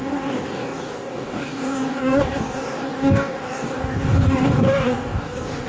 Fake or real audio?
fake